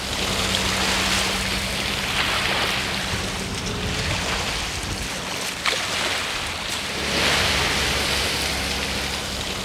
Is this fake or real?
real